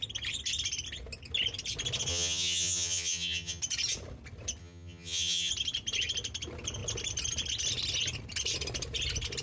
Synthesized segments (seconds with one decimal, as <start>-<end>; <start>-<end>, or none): 2.1-3.6; 4.6-5.5